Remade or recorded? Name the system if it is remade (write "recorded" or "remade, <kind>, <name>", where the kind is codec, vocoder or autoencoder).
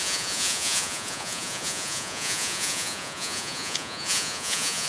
remade, vocoder, Vocos